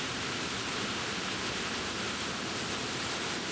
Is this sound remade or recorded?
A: recorded